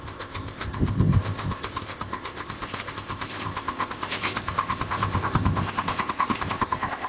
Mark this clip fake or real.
fake